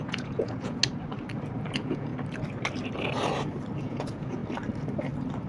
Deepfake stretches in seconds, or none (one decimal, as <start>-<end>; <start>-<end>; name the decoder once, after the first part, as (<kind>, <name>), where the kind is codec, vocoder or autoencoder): 0.0-0.8 (vocoder, Vocos); 1.7-2.1; 3.8-4.4